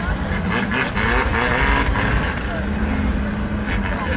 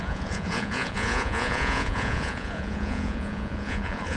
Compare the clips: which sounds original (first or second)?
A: first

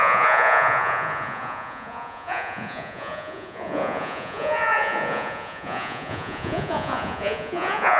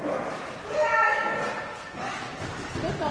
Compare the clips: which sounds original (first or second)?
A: second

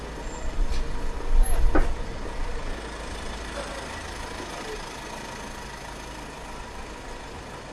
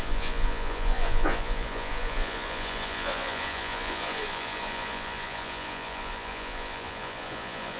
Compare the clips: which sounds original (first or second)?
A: first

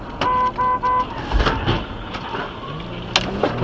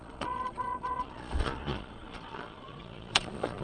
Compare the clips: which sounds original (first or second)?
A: first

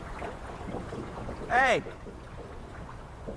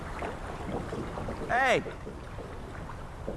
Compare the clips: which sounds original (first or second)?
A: second